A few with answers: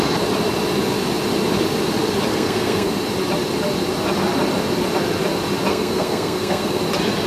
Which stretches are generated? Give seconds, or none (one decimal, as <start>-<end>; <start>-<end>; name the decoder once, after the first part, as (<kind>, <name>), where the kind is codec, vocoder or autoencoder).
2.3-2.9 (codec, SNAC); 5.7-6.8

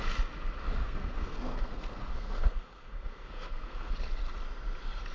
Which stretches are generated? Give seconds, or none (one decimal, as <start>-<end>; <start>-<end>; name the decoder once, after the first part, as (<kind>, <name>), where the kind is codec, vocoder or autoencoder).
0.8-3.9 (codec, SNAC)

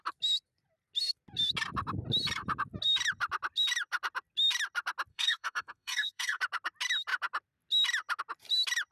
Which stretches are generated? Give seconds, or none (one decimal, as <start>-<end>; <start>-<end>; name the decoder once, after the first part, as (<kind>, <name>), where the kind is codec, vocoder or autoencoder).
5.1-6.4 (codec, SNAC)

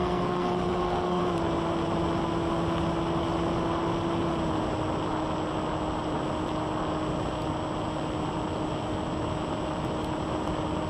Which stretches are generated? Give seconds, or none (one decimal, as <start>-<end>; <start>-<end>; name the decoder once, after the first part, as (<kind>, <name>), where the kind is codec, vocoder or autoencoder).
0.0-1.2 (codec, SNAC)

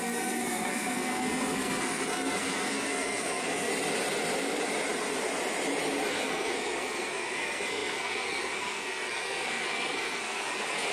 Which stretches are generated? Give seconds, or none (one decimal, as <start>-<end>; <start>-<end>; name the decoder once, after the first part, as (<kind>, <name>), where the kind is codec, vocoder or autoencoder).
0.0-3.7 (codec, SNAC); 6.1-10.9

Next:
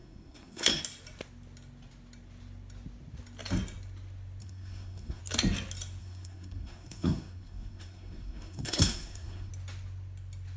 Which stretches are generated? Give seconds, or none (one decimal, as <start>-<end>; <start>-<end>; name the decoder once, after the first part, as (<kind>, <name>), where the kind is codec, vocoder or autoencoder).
0.0-0.8 (codec, SNAC); 4.4-5.2; 6.0-9.5